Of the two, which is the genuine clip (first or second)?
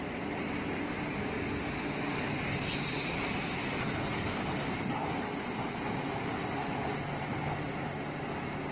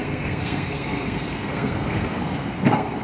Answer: first